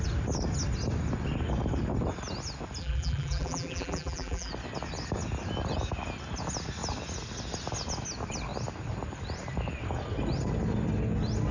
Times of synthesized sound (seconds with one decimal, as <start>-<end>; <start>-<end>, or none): 2.8-4.5